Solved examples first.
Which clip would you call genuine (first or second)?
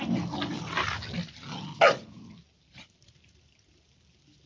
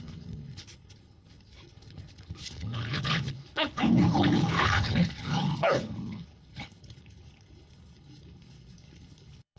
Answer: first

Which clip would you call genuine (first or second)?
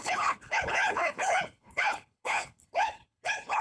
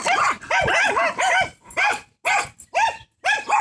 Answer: second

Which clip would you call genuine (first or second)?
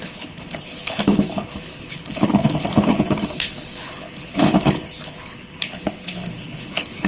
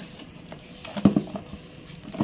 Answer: second